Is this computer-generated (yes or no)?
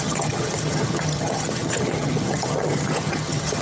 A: yes